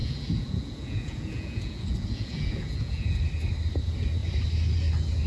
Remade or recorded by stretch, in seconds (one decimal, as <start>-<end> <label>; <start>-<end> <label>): 0.0-3.2 remade; 3.2-5.3 recorded